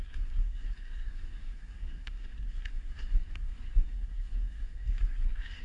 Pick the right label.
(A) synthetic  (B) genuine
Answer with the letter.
A